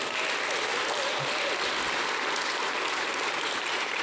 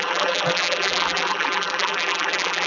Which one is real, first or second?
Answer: first